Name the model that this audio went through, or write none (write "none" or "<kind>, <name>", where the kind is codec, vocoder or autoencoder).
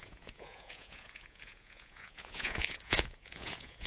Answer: vocoder, Vocos